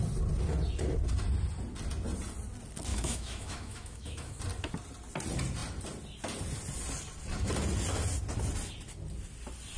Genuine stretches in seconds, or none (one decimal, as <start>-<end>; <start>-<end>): 0.0-2.9; 4.4-9.8